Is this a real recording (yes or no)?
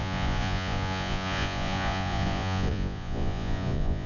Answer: no